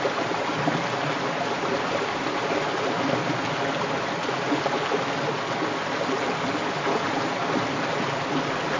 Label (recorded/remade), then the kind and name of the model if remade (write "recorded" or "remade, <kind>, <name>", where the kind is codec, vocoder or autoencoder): recorded